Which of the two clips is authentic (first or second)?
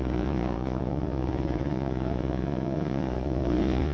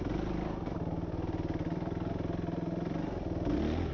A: second